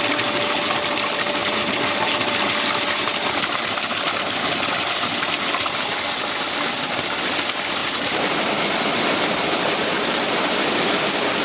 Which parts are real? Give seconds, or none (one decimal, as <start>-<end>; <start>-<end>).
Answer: 0.0-1.4; 2.5-7.8; 8.6-11.4